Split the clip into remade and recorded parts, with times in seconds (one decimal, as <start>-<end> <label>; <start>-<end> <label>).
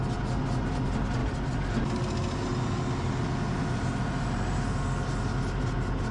0.0-1.2 recorded; 1.2-2.0 remade; 2.0-6.1 recorded